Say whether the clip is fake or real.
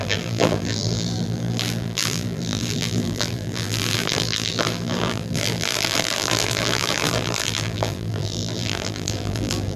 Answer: fake